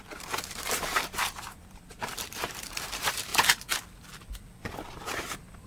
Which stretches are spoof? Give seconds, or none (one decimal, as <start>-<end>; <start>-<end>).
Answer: 0.0-3.3; 5.0-5.7